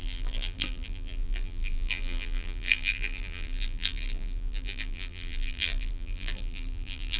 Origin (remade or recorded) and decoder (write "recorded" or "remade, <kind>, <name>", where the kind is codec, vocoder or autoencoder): remade, vocoder, BigVGAN v2